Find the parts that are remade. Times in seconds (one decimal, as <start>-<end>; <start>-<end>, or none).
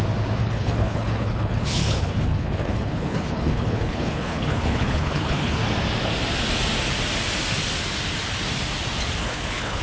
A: 0.4-5.6; 9.2-9.8